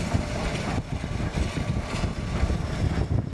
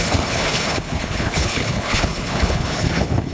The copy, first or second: second